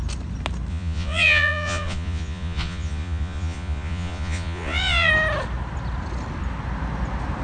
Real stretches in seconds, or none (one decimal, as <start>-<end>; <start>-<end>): 0.0-0.7; 5.1-7.4

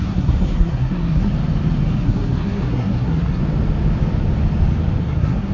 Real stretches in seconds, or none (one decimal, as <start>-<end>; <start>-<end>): 1.3-2.0; 3.4-5.0

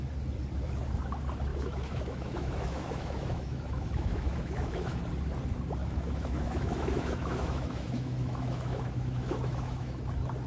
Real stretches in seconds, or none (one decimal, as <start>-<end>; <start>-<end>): 0.0-1.5; 5.0-5.8; 10.0-10.5

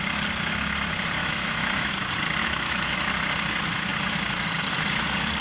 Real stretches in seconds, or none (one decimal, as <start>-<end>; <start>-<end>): 0.0-1.2; 1.9-2.4; 3.0-5.4

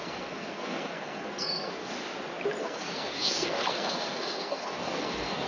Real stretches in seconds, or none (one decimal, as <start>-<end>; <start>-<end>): 1.9-2.6

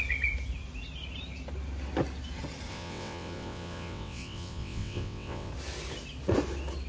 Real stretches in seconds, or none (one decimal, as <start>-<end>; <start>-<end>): 0.0-2.7; 5.5-6.9